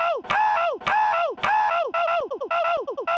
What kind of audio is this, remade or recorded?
recorded